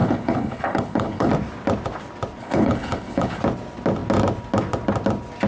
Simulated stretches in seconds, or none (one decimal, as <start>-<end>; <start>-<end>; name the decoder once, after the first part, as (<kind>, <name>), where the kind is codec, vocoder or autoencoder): 0.0-1.3 (codec, HILCodec); 2.4-3.4